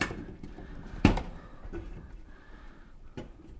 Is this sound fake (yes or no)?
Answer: yes